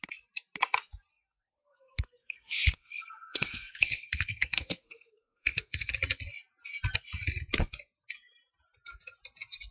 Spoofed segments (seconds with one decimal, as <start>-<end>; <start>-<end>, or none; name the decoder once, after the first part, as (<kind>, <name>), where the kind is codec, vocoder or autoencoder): 1.1-5.9 (codec, SNAC)